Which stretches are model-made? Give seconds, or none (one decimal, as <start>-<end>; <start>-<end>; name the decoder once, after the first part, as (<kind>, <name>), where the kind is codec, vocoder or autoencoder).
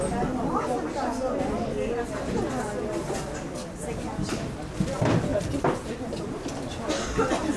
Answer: 5.3-6.4 (vocoder, BigVGAN v2)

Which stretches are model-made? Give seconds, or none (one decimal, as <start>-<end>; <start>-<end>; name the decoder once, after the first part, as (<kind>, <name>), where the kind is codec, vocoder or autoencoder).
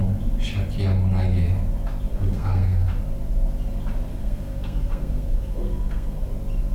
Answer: 2.1-3.0 (codec, SNAC); 4.1-6.3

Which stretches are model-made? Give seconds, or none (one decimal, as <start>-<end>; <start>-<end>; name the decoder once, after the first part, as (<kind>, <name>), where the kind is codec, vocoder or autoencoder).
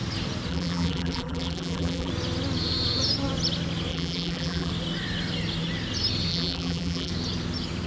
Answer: 0.5-2.1 (vocoder, BigVGAN v2); 3.9-4.7; 6.3-7.1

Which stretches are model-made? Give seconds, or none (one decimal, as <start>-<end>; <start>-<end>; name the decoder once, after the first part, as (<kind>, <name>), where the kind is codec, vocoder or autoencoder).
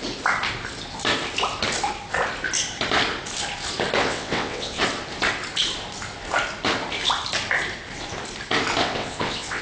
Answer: 4.0-4.8 (vocoder, WaveNeXt); 8.8-9.6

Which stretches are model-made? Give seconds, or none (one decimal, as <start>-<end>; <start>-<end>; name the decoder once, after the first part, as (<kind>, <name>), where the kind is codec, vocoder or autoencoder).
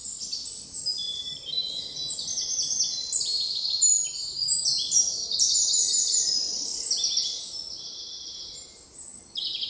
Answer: none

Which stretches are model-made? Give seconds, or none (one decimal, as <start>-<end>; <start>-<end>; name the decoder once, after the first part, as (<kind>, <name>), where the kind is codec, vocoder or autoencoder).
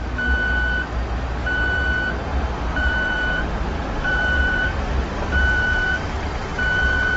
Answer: 2.3-6.3 (vocoder, BigVGAN v2)